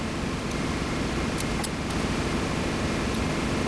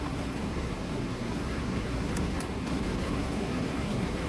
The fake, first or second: second